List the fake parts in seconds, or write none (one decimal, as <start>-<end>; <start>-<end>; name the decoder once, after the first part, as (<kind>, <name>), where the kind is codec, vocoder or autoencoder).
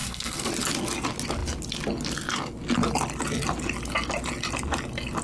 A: 0.0-0.5 (codec, SNAC)